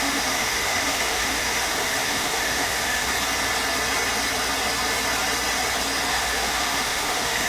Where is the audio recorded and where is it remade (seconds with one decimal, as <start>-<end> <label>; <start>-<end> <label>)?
0.0-3.1 remade; 3.1-6.1 recorded; 6.1-7.5 remade